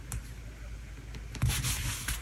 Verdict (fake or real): real